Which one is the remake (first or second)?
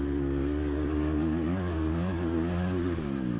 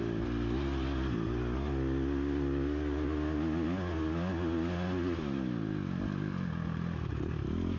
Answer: first